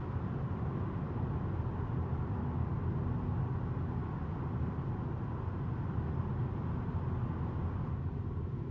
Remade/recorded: recorded